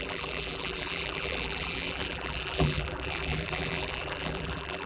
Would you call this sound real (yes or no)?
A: no